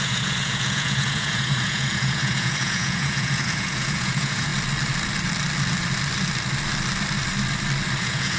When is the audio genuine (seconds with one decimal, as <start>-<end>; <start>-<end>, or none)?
4.5-8.0